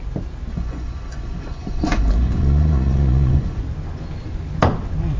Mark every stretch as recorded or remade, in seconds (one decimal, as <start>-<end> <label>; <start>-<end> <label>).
0.0-0.5 recorded; 0.5-3.6 remade; 3.6-5.2 recorded